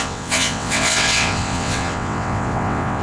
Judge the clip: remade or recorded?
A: remade